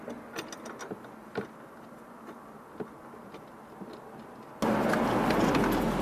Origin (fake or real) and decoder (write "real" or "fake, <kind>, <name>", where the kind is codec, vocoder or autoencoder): real